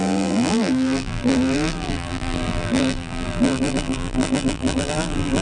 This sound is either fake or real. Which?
fake